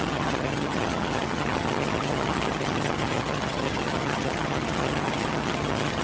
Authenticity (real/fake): fake